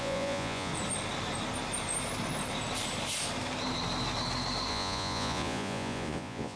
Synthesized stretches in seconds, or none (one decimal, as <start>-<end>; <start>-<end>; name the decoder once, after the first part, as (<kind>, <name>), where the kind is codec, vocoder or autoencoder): 0.0-0.7 (vocoder, Vocos); 4.7-6.6